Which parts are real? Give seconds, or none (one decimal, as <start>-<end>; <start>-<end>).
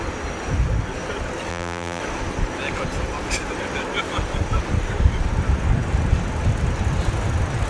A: 0.0-1.5; 2.0-7.7